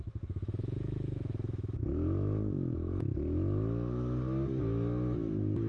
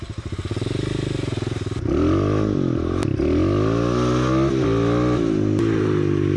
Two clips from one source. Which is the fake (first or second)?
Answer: first